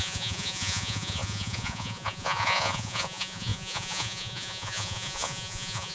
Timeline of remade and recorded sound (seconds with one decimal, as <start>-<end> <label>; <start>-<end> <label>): 0.0-5.9 remade